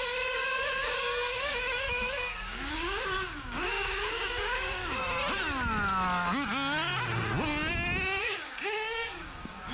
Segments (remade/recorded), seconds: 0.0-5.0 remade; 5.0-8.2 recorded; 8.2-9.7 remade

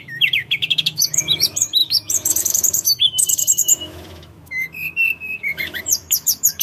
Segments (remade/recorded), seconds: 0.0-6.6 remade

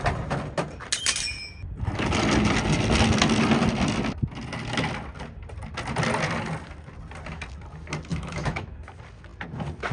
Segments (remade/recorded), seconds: 0.0-8.1 recorded; 8.1-8.7 remade; 8.7-9.9 recorded

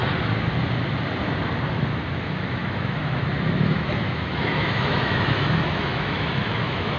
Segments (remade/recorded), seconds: 0.0-1.7 recorded; 1.7-7.0 remade